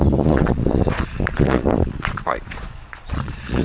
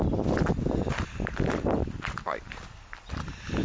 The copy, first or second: first